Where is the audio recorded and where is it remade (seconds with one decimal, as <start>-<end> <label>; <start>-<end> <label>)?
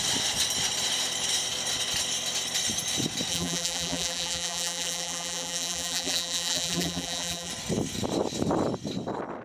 0.0-3.3 recorded; 3.3-7.5 remade; 7.5-9.4 recorded